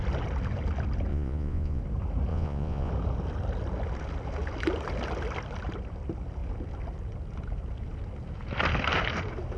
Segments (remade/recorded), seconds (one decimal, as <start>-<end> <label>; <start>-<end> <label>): 0.0-1.1 recorded; 1.1-1.8 remade; 1.8-2.3 recorded; 2.3-2.9 remade; 2.9-9.6 recorded